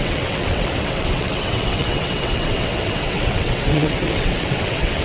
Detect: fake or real fake